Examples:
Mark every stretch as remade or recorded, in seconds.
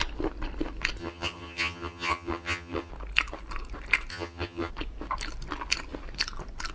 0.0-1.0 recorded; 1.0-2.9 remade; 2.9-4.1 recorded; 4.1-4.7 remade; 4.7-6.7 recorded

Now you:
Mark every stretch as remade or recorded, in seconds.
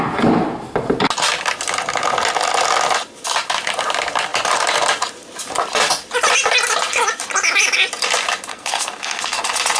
0.0-8.5 recorded; 8.5-9.4 remade; 9.4-9.8 recorded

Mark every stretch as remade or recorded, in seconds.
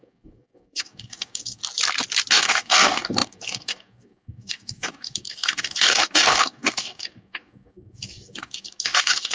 0.0-1.6 remade; 1.6-2.3 recorded; 2.3-9.3 remade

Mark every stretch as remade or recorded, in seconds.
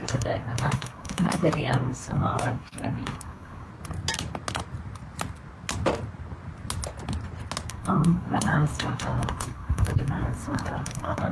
0.0-3.7 remade; 3.7-7.7 recorded; 7.7-11.3 remade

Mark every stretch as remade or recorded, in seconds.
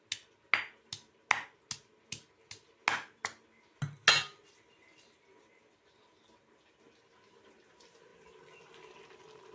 0.0-9.5 recorded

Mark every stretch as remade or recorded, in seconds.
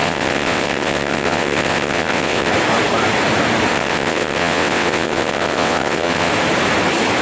0.0-2.5 remade; 2.5-3.7 recorded; 3.7-6.3 remade; 6.3-7.2 recorded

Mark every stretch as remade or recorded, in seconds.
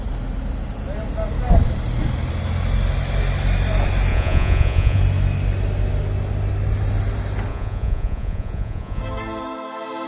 0.0-4.1 recorded; 4.1-5.0 remade; 5.0-7.5 recorded; 7.5-9.0 remade; 9.0-10.1 recorded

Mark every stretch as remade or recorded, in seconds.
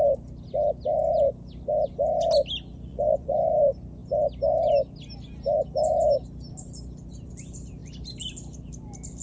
0.0-2.9 recorded; 2.9-3.5 remade; 3.5-9.2 recorded